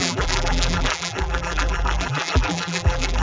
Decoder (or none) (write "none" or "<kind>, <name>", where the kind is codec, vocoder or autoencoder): vocoder, BigVGAN v2